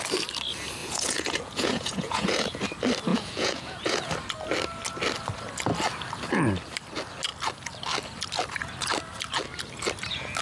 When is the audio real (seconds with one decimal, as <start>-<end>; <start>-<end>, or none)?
0.0-0.8; 2.6-3.1; 4.1-10.4